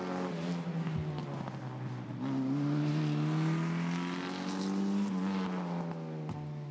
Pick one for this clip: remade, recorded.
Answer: recorded